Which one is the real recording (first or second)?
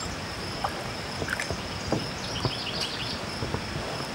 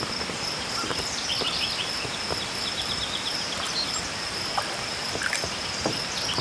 first